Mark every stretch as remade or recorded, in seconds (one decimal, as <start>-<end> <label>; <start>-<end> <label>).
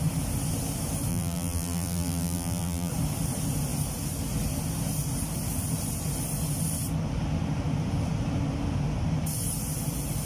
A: 0.0-1.1 recorded; 1.1-2.9 remade; 2.9-10.3 recorded